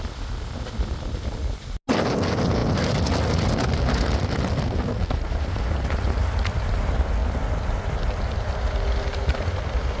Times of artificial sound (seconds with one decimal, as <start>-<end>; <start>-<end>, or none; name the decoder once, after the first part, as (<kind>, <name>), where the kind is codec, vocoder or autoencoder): none